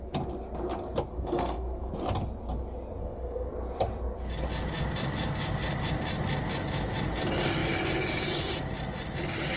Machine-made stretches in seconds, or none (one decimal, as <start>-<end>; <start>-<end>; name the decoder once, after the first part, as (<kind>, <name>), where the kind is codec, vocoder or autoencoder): 1.1-1.9 (codec, SNAC); 3.0-3.5